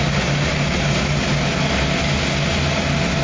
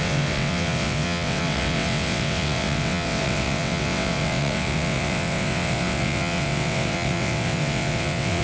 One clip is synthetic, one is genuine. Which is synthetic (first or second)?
second